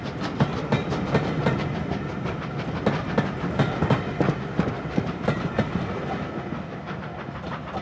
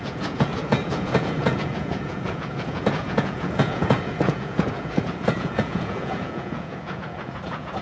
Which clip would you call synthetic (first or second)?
second